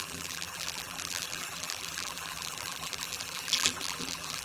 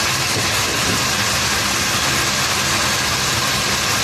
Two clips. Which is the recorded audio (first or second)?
second